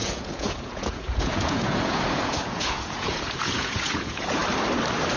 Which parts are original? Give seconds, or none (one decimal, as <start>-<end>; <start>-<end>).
4.4-5.2